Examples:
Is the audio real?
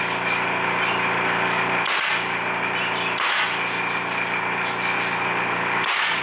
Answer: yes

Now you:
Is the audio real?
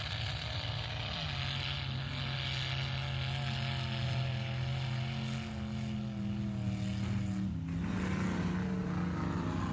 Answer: yes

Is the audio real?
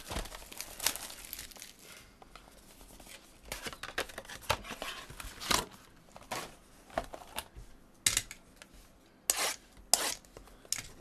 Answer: yes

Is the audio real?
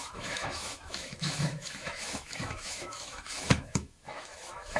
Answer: no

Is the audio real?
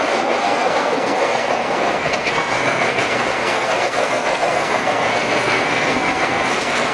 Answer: no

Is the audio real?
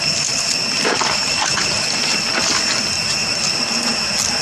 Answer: yes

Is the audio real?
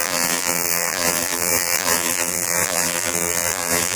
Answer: no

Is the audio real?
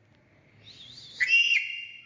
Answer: yes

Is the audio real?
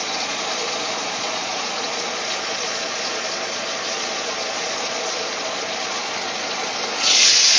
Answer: no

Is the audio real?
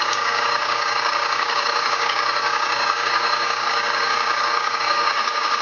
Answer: no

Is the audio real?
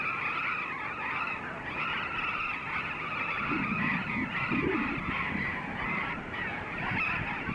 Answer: no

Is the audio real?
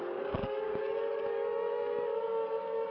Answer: no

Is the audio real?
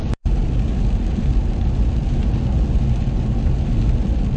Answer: yes